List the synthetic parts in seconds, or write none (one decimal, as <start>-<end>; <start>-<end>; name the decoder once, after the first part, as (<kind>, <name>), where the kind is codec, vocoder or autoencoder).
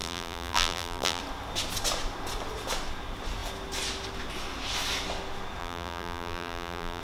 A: 0.0-1.2 (vocoder, BigVGAN v2); 5.6-7.0